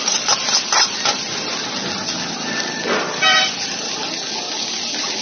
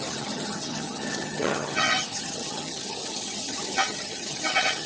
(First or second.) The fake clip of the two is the second